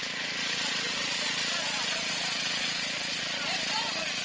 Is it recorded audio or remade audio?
remade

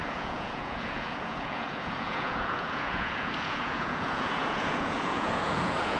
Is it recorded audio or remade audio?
remade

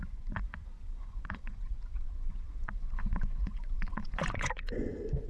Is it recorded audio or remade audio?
remade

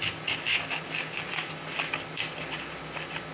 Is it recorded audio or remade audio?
recorded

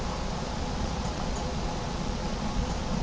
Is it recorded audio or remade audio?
remade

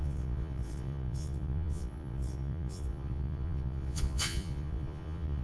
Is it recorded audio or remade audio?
remade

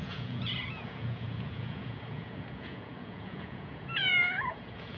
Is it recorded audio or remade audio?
remade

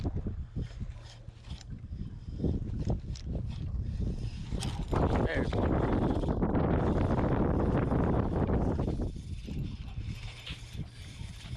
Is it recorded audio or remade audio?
recorded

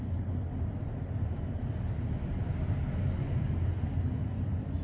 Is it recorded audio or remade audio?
recorded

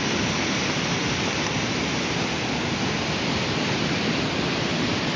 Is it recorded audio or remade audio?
recorded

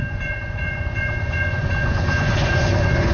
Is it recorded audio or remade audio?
remade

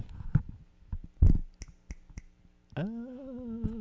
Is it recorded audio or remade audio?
recorded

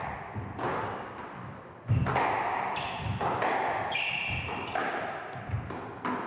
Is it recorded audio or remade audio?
recorded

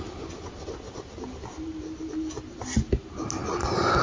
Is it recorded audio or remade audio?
recorded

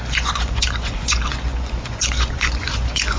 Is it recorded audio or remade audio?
remade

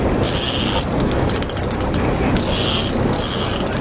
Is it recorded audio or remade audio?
recorded